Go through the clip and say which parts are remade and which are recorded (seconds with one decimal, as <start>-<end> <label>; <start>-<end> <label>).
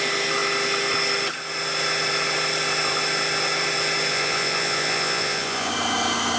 0.0-4.1 recorded; 4.1-5.7 remade; 5.7-6.4 recorded